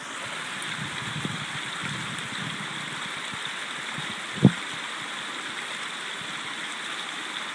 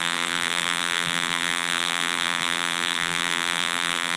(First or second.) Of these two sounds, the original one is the first